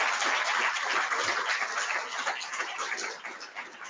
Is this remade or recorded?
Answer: recorded